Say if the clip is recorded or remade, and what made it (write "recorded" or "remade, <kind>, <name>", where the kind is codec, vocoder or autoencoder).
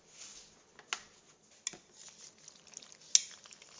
recorded